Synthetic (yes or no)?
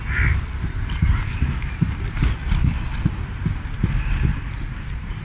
no